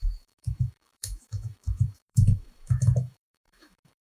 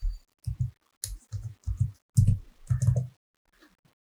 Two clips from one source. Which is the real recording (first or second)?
second